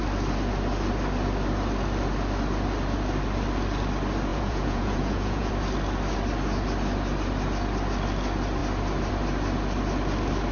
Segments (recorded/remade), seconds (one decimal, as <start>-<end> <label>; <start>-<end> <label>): 0.0-4.3 recorded; 4.3-5.5 remade; 5.5-10.5 recorded